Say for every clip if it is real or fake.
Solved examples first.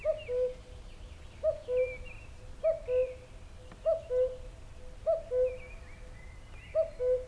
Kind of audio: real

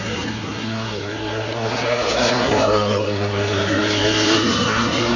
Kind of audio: fake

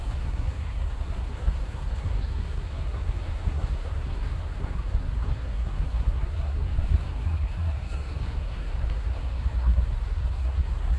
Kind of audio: fake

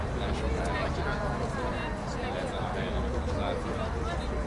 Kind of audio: real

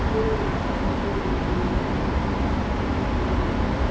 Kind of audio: real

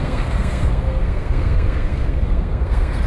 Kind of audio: fake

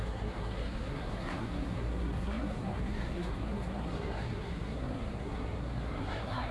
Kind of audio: fake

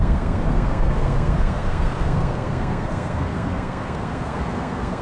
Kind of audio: fake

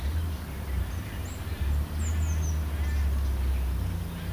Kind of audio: real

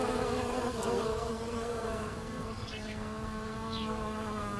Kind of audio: fake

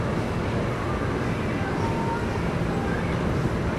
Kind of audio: real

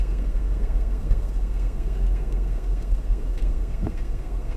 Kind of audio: fake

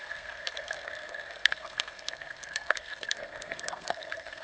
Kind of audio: fake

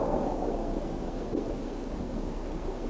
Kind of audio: fake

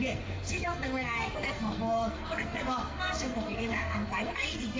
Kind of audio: fake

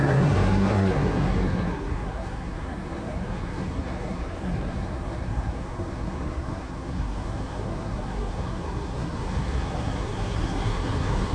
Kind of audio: fake